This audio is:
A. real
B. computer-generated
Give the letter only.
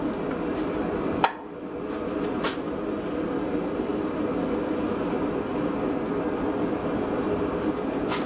A